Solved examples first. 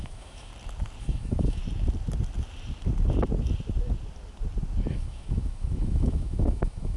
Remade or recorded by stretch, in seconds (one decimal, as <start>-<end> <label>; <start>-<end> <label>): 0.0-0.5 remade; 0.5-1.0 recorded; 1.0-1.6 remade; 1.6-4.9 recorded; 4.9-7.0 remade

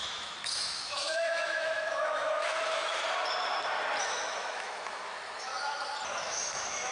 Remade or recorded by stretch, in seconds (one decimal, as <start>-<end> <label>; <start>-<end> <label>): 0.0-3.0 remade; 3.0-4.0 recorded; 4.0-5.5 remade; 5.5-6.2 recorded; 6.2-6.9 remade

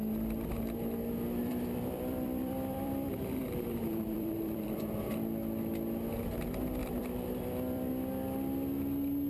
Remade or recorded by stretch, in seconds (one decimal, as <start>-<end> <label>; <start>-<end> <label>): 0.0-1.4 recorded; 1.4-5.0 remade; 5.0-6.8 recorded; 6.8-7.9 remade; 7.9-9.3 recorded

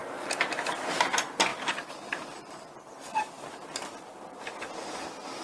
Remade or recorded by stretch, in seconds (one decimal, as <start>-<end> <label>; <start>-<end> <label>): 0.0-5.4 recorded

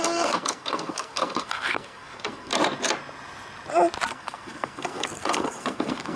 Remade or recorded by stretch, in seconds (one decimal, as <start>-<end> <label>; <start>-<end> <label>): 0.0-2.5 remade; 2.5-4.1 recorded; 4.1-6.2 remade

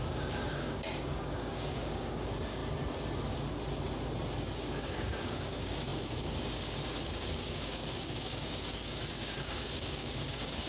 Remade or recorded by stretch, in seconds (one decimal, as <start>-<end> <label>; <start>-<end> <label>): 0.0-2.6 remade; 2.6-4.4 recorded; 4.4-10.7 remade

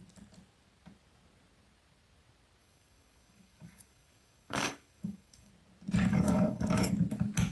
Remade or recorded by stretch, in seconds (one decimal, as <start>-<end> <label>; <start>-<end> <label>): 0.0-2.6 recorded; 2.6-5.5 remade; 5.5-6.1 recorded; 6.1-6.9 remade; 6.9-7.5 recorded

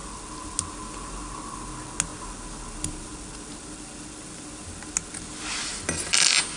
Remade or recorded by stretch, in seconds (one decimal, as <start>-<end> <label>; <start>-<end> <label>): 0.0-6.6 recorded